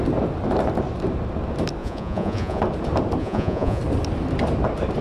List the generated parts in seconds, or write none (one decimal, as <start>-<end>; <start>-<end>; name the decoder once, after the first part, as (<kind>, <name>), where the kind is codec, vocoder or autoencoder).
1.8-2.6 (vocoder, Vocos); 3.2-3.8